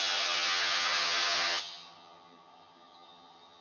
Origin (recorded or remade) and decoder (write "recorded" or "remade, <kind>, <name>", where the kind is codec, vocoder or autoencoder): remade, vocoder, HiFi-GAN